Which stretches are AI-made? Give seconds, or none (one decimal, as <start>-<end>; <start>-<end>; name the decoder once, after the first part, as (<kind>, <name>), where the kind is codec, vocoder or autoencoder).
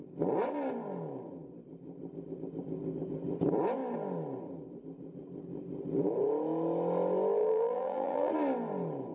7.4-8.3 (vocoder, BigVGAN v2)